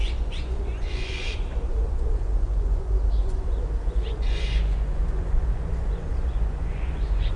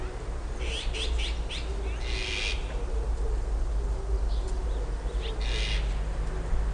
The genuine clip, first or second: second